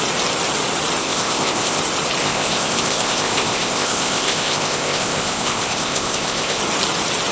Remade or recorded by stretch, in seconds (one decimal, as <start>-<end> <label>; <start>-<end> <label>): 0.0-1.0 recorded; 1.0-1.8 remade; 1.8-2.2 recorded; 2.2-6.6 remade; 6.6-7.3 recorded

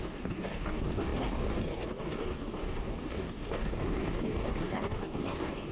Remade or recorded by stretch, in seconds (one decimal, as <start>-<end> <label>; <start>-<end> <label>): 0.0-5.7 remade